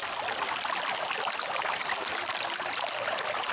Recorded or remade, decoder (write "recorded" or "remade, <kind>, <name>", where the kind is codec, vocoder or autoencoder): recorded